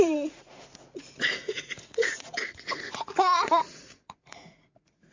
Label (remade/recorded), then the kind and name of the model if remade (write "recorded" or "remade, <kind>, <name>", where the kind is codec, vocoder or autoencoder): remade, vocoder, Vocos